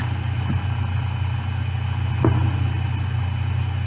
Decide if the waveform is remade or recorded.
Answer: recorded